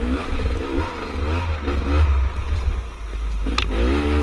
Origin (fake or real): real